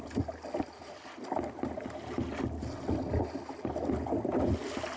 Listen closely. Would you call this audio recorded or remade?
recorded